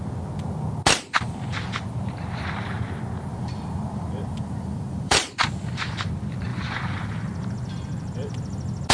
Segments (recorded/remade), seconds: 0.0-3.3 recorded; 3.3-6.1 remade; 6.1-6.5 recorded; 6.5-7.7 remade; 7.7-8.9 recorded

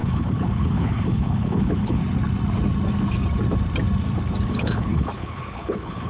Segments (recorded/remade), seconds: 0.0-2.0 remade; 2.0-4.5 recorded; 4.5-6.1 remade

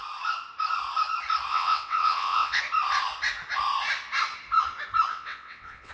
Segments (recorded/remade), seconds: 0.0-1.5 recorded; 1.5-2.6 remade; 2.6-5.1 recorded; 5.1-5.9 remade

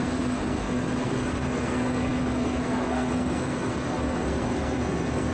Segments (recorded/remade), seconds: 0.0-5.3 remade

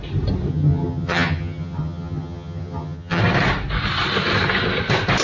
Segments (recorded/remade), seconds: 0.0-0.5 recorded; 0.5-3.2 remade; 3.2-5.2 recorded

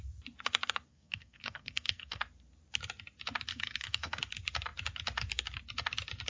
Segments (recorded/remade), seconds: 0.0-0.9 recorded; 0.9-2.2 remade; 2.2-3.5 recorded; 3.5-4.2 remade; 4.2-6.3 recorded